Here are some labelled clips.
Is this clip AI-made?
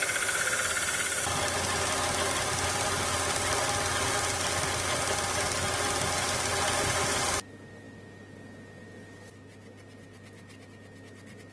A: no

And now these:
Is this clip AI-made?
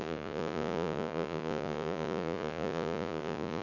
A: yes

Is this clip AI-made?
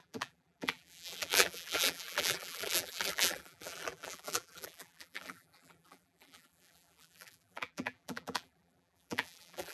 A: yes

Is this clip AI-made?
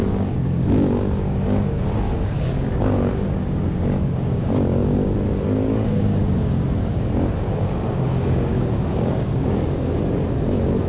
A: yes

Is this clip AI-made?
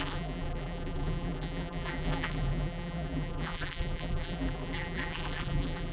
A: yes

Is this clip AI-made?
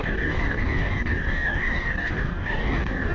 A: yes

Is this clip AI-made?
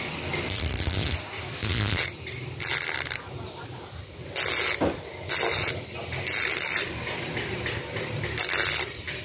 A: yes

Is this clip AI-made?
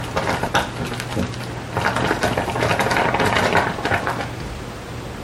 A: no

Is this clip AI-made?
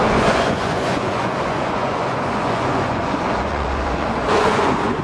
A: yes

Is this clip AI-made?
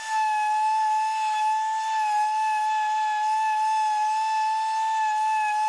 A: no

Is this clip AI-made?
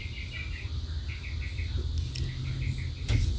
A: no